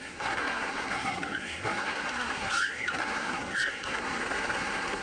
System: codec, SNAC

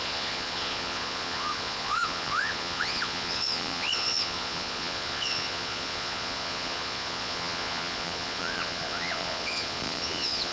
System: vocoder, Vocos